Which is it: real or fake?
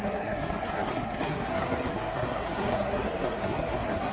fake